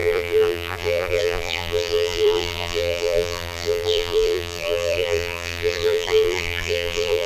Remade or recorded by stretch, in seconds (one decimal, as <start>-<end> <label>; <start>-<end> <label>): 0.0-7.3 remade